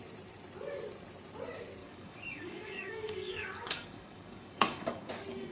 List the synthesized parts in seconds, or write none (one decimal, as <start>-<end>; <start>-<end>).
1.8-5.1